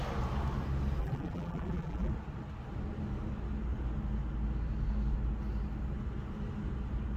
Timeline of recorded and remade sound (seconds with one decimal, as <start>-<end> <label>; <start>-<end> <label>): 0.0-1.0 recorded; 1.0-2.1 remade; 2.1-7.2 recorded